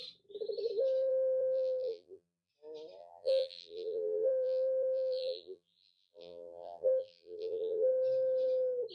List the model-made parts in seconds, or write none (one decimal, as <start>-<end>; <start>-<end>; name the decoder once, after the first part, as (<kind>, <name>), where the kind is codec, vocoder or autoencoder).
1.1-2.5 (vocoder, BigVGAN v2); 3.0-7.9